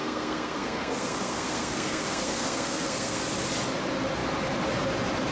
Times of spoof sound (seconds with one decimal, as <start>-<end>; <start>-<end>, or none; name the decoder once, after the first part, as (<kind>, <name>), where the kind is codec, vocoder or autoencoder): 0.0-3.2 (codec, SNAC)